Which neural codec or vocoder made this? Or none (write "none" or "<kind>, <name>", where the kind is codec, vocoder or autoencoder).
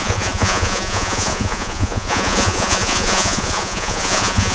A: vocoder, Vocos